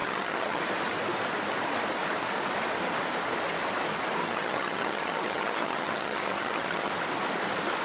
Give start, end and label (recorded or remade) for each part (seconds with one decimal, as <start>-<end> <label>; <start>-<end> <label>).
0.0-0.6 remade; 0.6-4.2 recorded; 4.2-6.9 remade; 6.9-7.8 recorded